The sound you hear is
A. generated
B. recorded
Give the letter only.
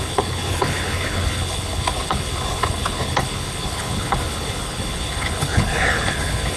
A